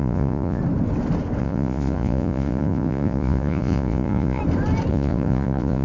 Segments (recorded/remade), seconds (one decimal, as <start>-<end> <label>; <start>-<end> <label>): 0.0-0.6 remade; 0.6-1.4 recorded; 1.4-4.4 remade; 4.4-4.9 recorded; 4.9-5.8 remade